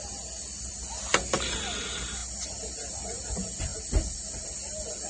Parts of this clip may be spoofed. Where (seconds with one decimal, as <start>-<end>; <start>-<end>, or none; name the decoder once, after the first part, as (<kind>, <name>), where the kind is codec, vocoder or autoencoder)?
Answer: none